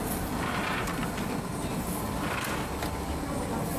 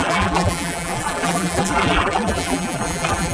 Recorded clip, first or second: first